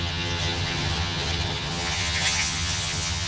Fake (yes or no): yes